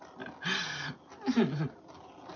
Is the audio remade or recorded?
recorded